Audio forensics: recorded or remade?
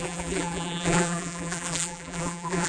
remade